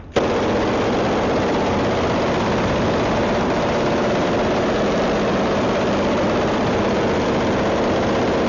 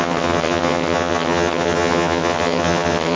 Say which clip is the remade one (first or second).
second